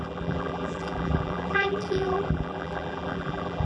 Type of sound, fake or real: fake